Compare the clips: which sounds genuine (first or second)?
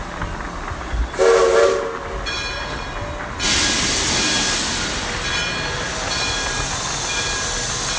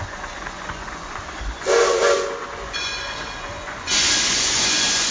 first